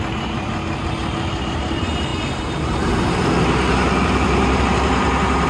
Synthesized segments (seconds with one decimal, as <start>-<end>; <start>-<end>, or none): none